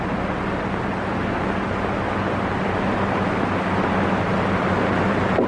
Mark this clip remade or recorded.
recorded